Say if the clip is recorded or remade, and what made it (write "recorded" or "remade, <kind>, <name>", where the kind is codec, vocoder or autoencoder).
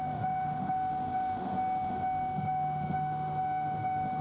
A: remade, autoencoder, DAC-VAE